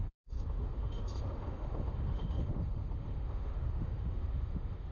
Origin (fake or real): fake